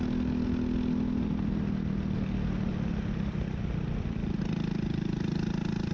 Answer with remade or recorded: recorded